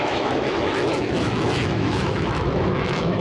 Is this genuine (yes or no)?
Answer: no